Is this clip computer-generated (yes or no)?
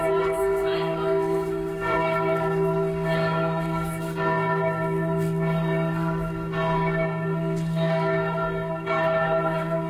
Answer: yes